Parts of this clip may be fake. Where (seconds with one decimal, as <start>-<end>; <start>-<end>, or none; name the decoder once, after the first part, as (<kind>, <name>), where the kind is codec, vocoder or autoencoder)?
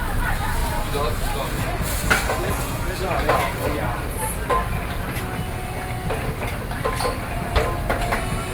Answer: none